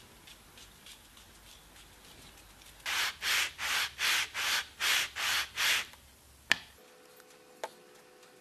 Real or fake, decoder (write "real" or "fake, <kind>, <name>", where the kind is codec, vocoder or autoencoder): real